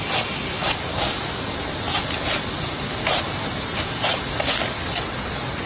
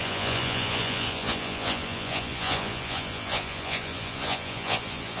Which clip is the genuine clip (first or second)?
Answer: first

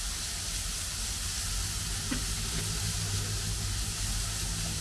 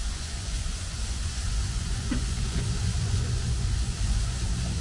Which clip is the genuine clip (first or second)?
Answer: first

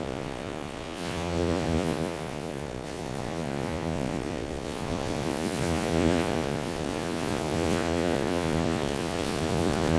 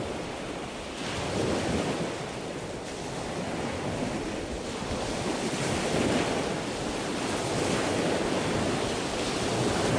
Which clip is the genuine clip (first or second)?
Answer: second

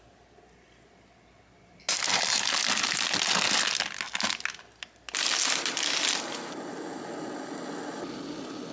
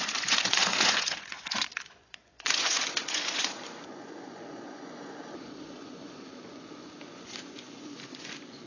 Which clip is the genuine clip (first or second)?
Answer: first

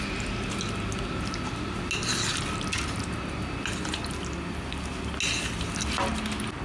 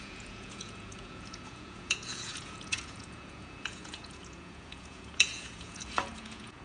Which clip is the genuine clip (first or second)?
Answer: first